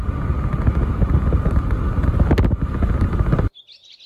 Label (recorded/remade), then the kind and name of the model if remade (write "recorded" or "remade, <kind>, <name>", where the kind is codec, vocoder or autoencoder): recorded